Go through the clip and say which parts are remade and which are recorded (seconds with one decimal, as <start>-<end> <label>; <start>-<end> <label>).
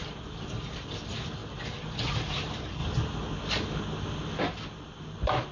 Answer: 0.0-2.8 remade; 2.8-4.4 recorded; 4.4-5.5 remade